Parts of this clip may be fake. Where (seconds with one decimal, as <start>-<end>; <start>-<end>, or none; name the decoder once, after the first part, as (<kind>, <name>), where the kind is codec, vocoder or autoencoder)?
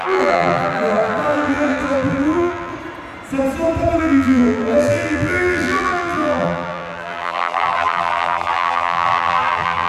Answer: 0.0-2.7 (vocoder, BigVGAN v2); 4.0-9.9